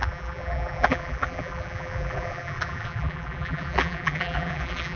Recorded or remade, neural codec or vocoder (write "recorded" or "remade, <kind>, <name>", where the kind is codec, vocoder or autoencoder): remade, vocoder, BigVGAN v2